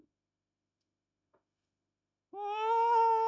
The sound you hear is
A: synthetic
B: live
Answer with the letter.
A